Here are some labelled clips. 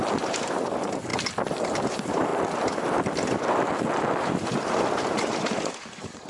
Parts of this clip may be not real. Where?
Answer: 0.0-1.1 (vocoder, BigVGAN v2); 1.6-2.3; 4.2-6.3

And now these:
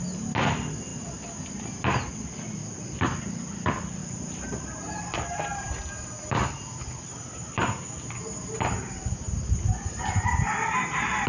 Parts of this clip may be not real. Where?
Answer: 4.0-5.7 (vocoder, BigVGAN v2)

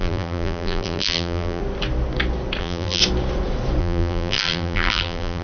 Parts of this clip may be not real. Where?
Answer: 0.0-1.6 (vocoder, BigVGAN v2); 2.6-3.0; 3.8-5.4